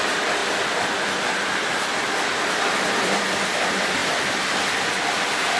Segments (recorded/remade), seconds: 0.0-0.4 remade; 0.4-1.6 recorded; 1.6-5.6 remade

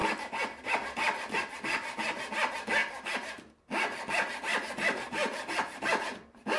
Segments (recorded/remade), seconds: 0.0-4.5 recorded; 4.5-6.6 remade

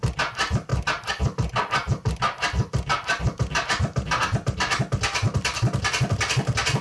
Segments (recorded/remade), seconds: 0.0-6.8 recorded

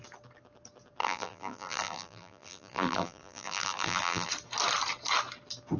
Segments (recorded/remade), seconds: 0.0-1.0 recorded; 1.0-4.3 remade; 4.3-5.8 recorded

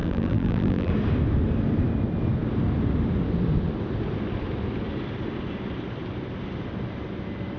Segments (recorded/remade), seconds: 0.0-0.9 remade; 0.9-7.6 recorded